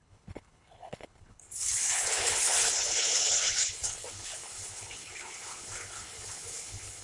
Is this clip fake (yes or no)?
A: yes